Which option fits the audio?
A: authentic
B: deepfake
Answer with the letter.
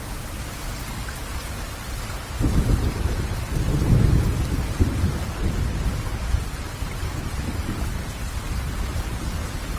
A